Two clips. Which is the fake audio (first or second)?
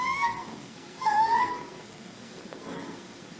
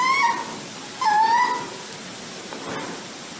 first